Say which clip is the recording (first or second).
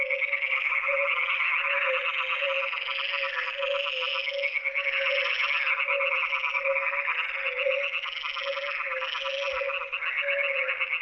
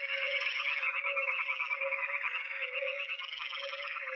first